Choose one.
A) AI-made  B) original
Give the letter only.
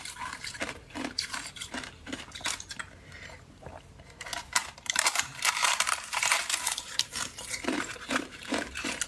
A